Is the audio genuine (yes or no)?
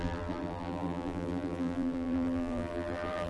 no